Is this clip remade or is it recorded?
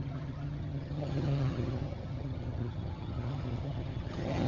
remade